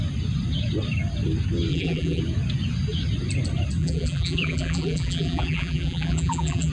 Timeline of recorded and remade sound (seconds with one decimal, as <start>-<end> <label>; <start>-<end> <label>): 0.0-1.7 recorded; 1.7-2.2 remade; 2.2-3.8 recorded; 3.8-6.7 remade